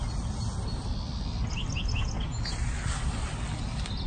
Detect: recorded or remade recorded